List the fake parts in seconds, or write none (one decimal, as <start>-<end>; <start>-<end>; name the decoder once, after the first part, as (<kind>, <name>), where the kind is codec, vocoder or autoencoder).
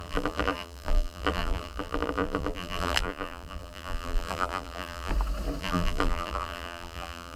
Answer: 0.0-5.1 (vocoder, BigVGAN v2); 5.6-7.4